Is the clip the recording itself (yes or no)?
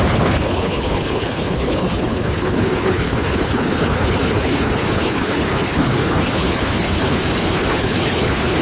no